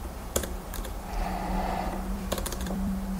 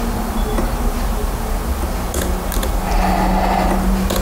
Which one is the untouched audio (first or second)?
second